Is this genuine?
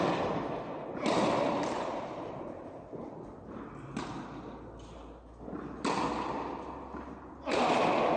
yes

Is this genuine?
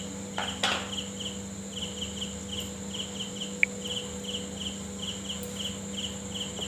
yes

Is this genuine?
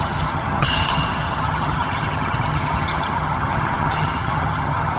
no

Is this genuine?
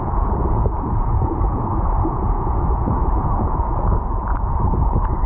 no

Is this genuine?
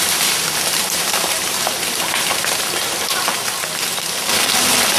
no